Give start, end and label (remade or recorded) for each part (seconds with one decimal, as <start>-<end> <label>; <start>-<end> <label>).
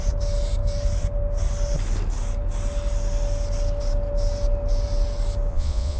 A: 0.0-5.5 recorded; 5.5-6.0 remade